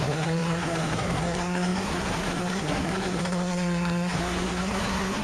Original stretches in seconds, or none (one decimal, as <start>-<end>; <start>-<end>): none